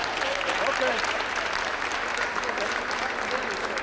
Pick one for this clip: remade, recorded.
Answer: recorded